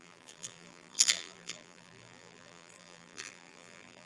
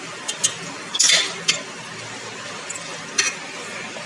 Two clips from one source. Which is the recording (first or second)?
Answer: second